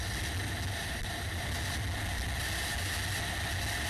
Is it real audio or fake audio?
real